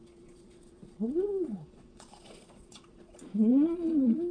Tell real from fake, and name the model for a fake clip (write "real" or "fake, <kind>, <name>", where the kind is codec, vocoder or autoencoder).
fake, vocoder, Vocos